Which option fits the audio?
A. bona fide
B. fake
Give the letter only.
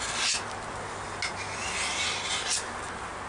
A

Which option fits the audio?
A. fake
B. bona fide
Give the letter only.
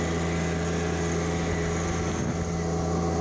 B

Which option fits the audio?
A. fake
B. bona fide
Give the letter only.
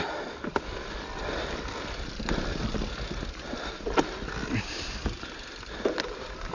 B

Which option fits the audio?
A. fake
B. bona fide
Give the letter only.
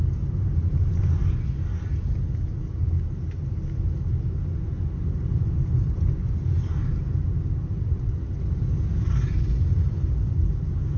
B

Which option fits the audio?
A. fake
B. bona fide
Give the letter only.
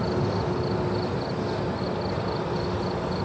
B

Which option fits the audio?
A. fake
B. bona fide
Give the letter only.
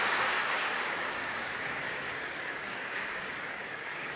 A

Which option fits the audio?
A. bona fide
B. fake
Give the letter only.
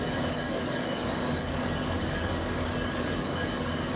B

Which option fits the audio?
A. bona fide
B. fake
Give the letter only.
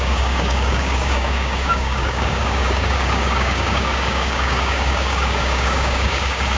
B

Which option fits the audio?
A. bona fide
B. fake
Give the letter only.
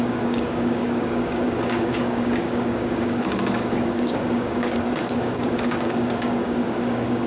B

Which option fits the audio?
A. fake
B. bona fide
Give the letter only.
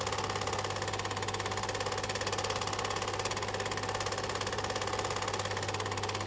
B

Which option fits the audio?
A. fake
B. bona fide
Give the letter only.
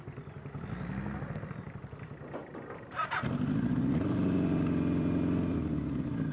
B